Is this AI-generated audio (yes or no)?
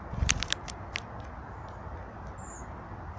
no